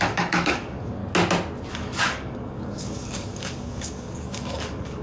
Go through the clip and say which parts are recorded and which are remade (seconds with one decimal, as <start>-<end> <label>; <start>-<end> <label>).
0.0-1.0 remade; 1.0-1.7 recorded; 1.7-5.0 remade